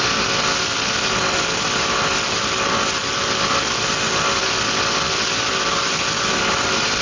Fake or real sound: real